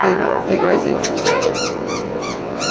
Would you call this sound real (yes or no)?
no